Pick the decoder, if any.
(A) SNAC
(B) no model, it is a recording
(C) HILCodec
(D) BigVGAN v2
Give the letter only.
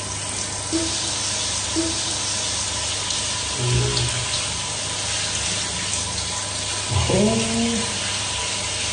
B